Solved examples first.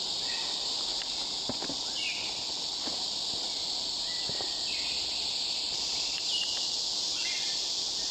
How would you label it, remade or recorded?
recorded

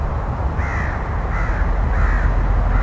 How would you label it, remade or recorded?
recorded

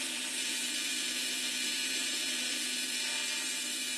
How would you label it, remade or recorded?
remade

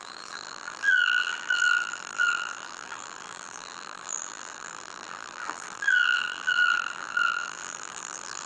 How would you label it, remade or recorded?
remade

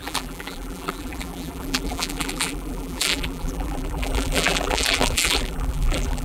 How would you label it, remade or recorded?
remade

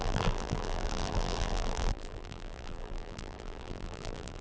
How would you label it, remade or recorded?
remade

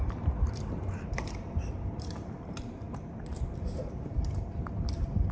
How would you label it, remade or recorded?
remade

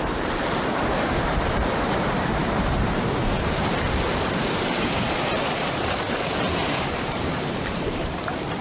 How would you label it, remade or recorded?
remade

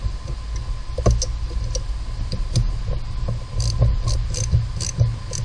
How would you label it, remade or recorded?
recorded